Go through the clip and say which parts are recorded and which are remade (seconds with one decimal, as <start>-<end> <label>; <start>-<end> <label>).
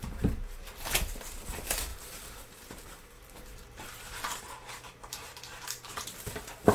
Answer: 0.0-6.7 remade